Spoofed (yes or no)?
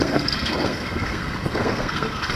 yes